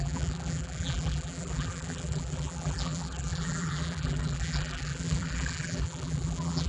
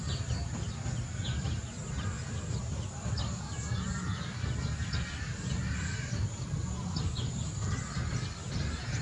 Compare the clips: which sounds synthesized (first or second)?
first